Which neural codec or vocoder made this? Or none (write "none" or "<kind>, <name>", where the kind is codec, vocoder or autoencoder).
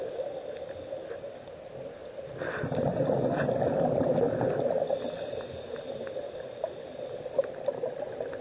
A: none